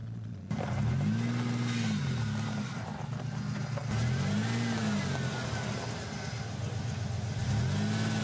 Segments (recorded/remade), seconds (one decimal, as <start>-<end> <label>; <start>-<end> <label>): 0.0-0.5 remade; 0.5-8.2 recorded